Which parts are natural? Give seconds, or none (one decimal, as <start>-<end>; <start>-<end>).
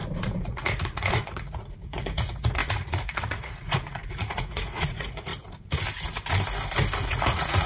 5.3-7.0